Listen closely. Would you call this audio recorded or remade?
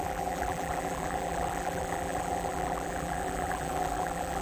remade